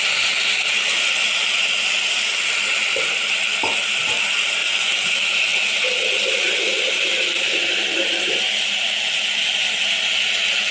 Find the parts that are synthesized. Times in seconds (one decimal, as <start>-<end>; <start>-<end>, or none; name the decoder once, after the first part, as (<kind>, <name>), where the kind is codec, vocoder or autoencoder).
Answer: 4.6-5.1 (vocoder, Vocos)